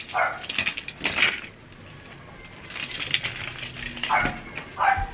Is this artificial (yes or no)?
no